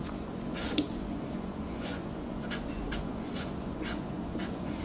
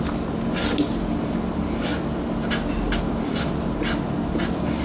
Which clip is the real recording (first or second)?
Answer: second